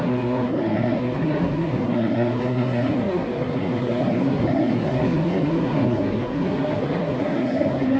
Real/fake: fake